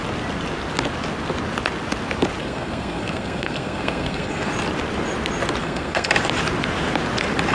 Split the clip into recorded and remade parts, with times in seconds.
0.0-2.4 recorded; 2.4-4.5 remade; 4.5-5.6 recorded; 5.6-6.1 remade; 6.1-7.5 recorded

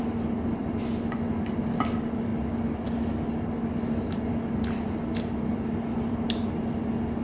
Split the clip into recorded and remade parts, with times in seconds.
0.0-7.2 recorded